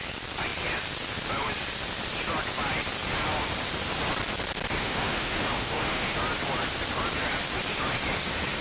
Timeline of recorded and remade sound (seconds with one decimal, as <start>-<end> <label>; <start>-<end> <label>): 0.0-4.8 recorded; 4.8-6.2 remade; 6.2-8.6 recorded